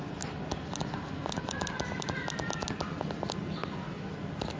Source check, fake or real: real